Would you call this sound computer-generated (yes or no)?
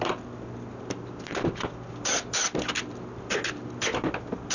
no